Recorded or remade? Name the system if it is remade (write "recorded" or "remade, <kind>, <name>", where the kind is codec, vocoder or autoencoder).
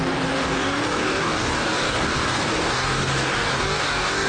remade, codec, DAC